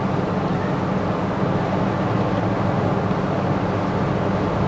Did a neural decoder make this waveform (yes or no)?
no